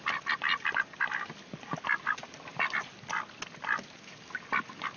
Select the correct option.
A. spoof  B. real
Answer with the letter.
B